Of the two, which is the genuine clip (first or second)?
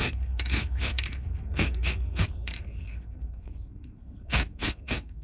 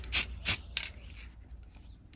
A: second